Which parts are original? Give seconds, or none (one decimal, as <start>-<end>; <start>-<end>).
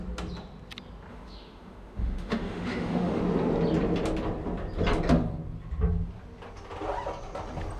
0.0-1.1; 3.2-7.8